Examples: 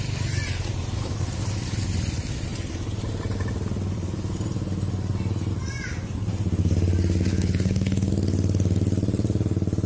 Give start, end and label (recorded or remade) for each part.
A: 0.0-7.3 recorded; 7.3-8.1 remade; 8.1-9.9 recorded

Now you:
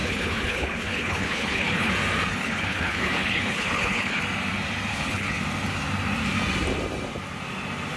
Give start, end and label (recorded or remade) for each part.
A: 0.0-1.9 remade; 1.9-2.3 recorded; 2.3-4.2 remade; 4.2-4.9 recorded; 4.9-5.4 remade; 5.4-8.0 recorded

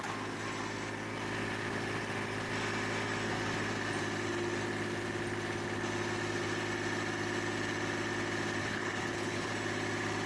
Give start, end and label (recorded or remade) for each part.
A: 0.0-8.6 recorded; 8.6-9.5 remade; 9.5-10.3 recorded

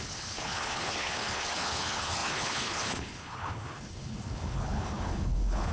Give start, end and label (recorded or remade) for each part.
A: 0.0-5.7 remade

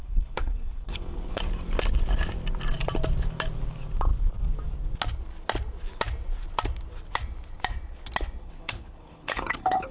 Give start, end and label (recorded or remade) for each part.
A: 0.0-1.4 remade; 1.4-8.4 recorded; 8.4-9.9 remade

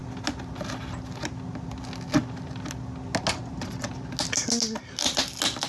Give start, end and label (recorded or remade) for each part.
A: 0.0-5.7 recorded